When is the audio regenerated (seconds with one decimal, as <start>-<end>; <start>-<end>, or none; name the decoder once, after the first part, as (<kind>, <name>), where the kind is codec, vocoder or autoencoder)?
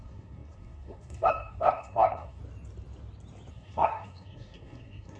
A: 0.0-2.4 (codec, SNAC); 3.5-5.2